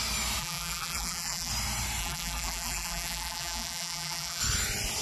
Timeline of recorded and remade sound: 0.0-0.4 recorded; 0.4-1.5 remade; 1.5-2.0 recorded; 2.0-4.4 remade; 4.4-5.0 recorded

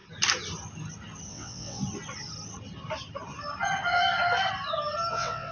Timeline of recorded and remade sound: 0.0-1.3 recorded; 1.3-1.8 remade; 1.8-5.1 recorded; 5.1-5.5 remade

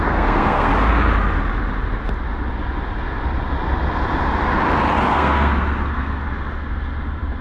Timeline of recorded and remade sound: 0.0-0.7 remade; 0.7-5.1 recorded; 5.1-6.2 remade; 6.2-7.4 recorded

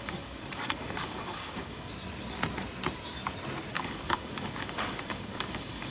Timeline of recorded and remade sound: 0.0-1.9 remade; 1.9-3.7 recorded; 3.7-5.9 remade

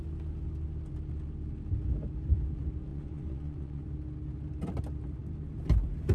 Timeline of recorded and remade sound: 0.0-2.9 recorded; 2.9-3.8 remade; 3.8-6.1 recorded

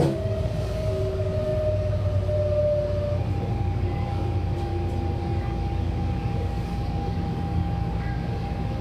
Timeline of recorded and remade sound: 0.0-1.5 remade; 1.5-3.4 recorded; 3.4-4.7 remade; 4.7-5.2 recorded; 5.2-8.8 remade

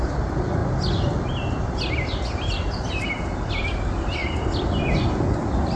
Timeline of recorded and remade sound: 0.0-0.6 remade; 0.6-3.5 recorded; 3.5-5.8 remade

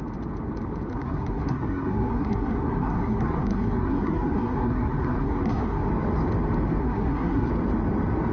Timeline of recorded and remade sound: 0.0-0.9 recorded; 0.9-5.9 remade; 5.9-6.8 recorded; 6.8-7.5 remade; 7.5-8.3 recorded